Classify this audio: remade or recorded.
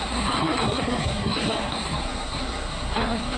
remade